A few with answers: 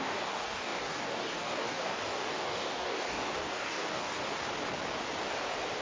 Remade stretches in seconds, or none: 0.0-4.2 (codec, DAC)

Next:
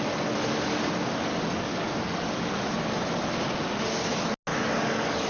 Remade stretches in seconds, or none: 1.3-2.5 (codec, DAC); 4.5-5.3